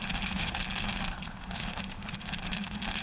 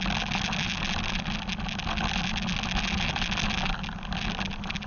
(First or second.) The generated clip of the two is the first